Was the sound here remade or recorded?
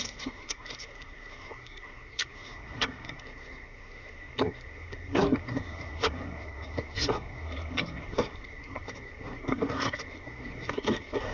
remade